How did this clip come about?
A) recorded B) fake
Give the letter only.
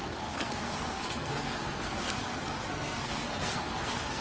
B